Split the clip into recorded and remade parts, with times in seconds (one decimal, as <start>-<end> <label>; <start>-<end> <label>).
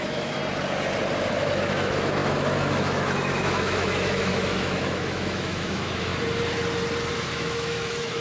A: 0.0-0.4 remade; 0.4-1.3 recorded; 1.3-6.1 remade; 6.1-7.1 recorded; 7.1-8.2 remade